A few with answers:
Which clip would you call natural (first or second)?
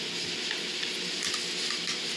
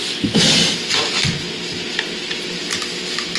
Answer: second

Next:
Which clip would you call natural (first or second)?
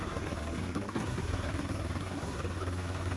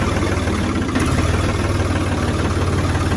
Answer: second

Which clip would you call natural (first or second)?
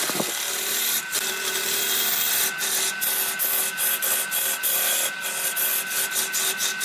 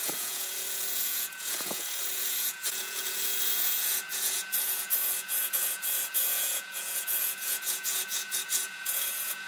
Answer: first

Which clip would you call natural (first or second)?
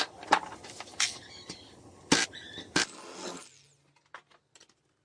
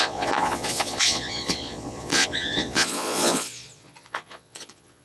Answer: first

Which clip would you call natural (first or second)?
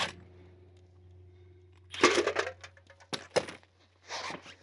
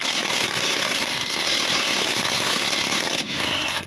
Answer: first